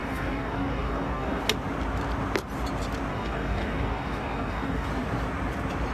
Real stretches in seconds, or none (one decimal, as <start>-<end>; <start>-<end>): 1.4-3.1; 4.9-5.9